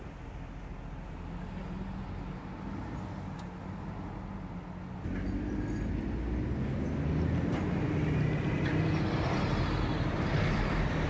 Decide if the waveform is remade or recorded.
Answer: recorded